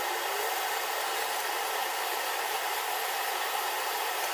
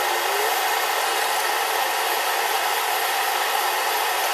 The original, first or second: second